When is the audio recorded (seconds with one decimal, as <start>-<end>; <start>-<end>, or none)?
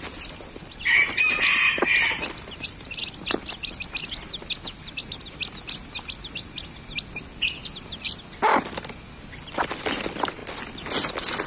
0.0-10.4; 11.1-11.5